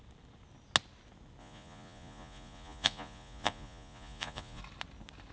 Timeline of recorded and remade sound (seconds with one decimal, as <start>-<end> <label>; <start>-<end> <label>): 0.0-1.4 recorded; 1.4-4.6 remade; 4.6-5.3 recorded